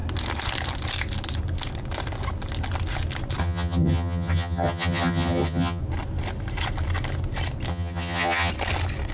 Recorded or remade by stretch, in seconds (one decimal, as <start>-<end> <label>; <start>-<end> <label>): 0.0-3.4 recorded; 3.4-5.8 remade; 5.8-7.7 recorded; 7.7-8.5 remade; 8.5-9.1 recorded